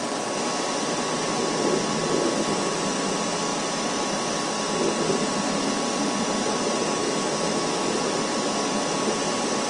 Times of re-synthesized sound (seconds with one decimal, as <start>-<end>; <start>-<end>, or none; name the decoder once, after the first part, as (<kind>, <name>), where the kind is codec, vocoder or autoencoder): 7.0-7.8 (autoencoder, DAC-VAE)